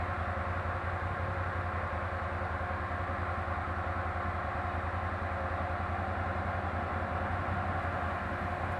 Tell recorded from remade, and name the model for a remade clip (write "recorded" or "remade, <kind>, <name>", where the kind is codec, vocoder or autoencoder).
recorded